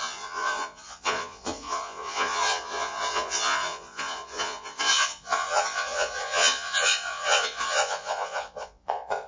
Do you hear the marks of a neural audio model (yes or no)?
yes